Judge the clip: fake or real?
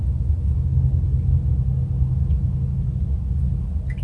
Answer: real